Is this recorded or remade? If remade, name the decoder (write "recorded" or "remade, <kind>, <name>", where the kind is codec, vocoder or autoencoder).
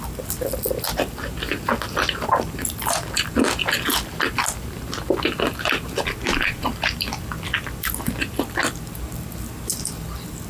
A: recorded